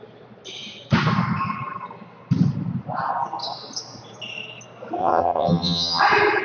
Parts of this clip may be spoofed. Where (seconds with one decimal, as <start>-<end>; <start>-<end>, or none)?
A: 5.0-6.0